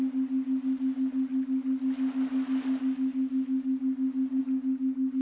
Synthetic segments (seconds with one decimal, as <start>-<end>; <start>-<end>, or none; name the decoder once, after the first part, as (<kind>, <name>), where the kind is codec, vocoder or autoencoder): none